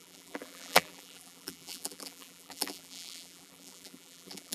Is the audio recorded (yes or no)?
no